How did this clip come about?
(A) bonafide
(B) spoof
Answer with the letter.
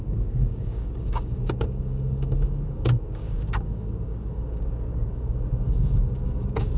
B